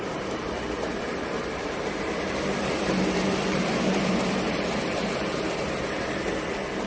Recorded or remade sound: remade